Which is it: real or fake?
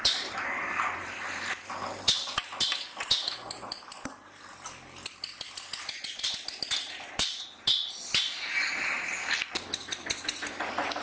real